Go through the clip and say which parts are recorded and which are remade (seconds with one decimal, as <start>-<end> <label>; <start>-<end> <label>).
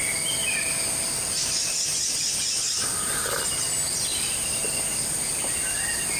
0.0-6.2 recorded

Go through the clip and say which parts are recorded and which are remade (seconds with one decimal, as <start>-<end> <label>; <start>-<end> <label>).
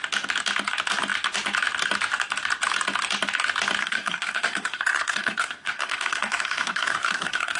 0.0-3.8 recorded; 3.8-7.6 remade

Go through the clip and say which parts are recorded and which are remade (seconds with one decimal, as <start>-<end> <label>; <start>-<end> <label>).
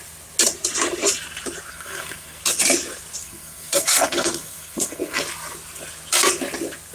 0.0-1.7 recorded; 1.7-2.4 remade; 2.4-3.2 recorded; 3.2-5.2 remade; 5.2-6.9 recorded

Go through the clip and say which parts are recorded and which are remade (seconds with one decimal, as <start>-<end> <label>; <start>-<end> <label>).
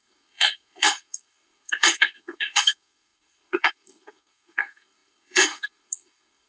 0.0-6.5 remade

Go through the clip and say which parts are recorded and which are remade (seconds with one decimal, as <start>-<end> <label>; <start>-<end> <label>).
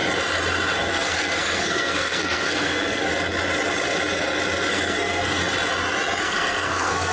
0.0-0.9 recorded; 0.9-3.1 remade; 3.1-4.7 recorded; 4.7-5.4 remade; 5.4-6.2 recorded; 6.2-7.1 remade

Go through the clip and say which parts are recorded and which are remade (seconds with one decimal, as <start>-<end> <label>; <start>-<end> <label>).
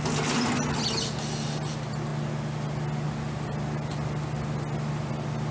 0.0-5.5 recorded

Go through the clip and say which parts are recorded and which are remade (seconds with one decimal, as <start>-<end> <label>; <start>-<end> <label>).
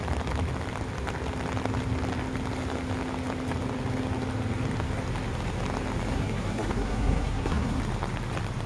0.0-6.1 recorded; 6.1-7.8 remade; 7.8-8.7 recorded